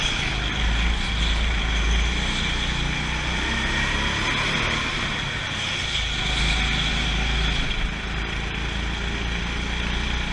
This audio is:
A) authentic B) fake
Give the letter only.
A